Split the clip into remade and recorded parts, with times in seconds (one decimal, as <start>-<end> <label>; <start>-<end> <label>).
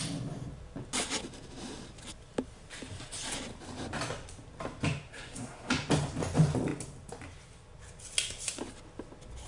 0.0-5.1 recorded; 5.1-5.7 remade; 5.7-9.5 recorded